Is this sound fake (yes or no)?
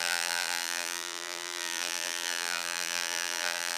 yes